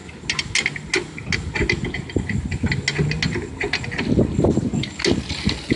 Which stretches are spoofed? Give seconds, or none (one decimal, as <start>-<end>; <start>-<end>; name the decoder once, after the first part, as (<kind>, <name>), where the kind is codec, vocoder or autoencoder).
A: none